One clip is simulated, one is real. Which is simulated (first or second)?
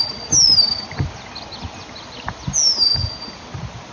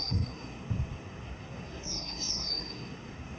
second